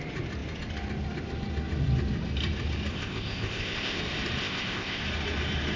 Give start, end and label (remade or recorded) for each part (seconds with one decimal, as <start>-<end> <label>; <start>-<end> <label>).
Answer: 0.0-2.9 recorded; 2.9-4.0 remade; 4.0-4.4 recorded; 4.4-5.0 remade; 5.0-5.8 recorded